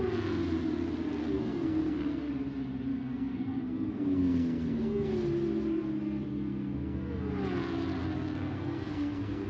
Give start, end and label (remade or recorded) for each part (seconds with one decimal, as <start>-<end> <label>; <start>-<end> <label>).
0.0-1.2 recorded; 1.2-2.3 remade; 2.3-2.9 recorded; 2.9-5.1 remade; 5.1-6.3 recorded; 6.3-7.3 remade; 7.3-8.0 recorded; 8.0-9.5 remade